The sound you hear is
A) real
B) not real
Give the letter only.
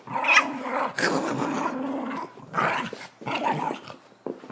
A